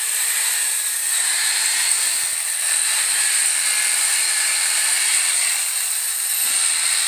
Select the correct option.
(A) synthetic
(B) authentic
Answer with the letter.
B